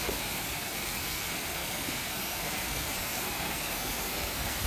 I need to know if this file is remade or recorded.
remade